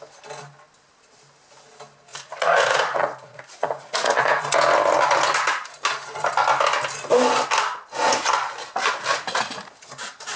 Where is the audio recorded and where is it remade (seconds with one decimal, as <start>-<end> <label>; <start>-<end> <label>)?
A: 0.0-2.1 recorded; 2.1-4.4 remade; 4.4-10.4 recorded